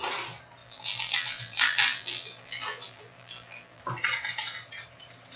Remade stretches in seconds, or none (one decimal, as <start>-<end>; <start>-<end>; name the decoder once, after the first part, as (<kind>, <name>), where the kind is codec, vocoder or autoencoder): 0.6-3.8 (vocoder, BigVGAN v2)